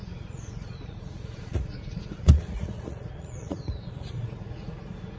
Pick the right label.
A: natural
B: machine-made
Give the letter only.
B